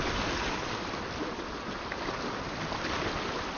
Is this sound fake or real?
real